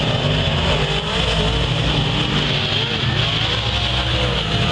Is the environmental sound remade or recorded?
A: recorded